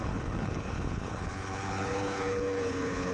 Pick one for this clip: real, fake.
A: fake